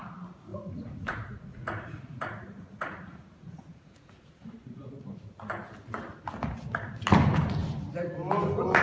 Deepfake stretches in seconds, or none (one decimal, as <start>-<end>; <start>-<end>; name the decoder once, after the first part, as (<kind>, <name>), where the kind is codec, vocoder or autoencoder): 0.5-4.9 (vocoder, Vocos)